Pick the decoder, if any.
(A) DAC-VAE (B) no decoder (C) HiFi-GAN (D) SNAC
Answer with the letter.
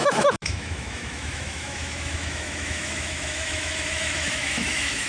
A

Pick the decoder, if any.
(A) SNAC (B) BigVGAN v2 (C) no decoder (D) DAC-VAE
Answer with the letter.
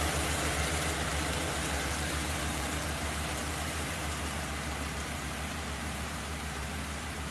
B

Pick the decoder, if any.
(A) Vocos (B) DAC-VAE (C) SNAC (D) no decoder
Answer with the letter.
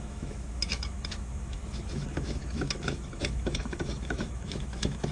B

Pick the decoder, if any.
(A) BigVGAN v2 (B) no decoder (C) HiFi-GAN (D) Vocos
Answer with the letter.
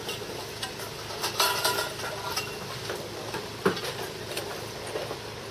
B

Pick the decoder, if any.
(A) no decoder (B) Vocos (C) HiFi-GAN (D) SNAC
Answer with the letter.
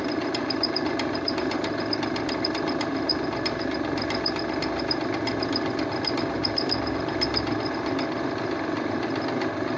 A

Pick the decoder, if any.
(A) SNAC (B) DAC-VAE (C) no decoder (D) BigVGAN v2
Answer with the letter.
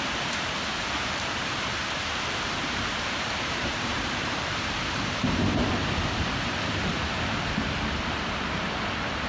D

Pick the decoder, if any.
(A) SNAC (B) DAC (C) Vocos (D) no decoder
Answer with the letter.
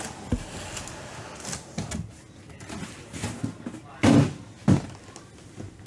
D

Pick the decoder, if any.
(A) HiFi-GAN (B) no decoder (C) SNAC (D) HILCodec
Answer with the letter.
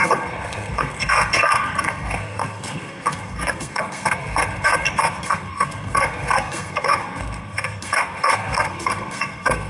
C